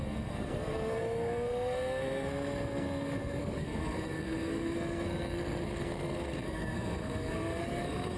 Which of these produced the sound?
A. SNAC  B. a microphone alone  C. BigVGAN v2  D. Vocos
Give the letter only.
A